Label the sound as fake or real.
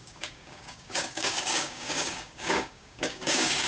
fake